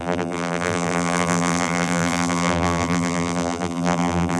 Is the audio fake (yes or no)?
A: yes